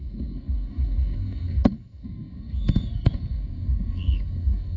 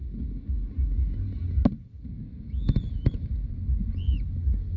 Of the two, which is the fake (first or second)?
first